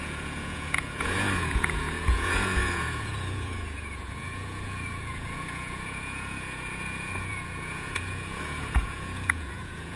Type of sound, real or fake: fake